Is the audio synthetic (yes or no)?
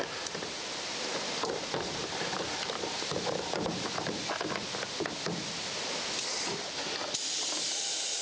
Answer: no